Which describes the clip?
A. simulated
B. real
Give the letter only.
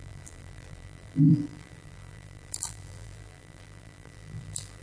A